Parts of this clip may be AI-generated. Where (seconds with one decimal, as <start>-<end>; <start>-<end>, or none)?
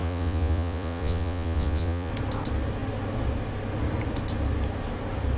0.0-2.1